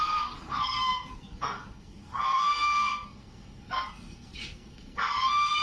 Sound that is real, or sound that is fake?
fake